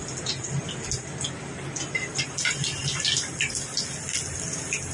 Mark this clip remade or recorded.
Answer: recorded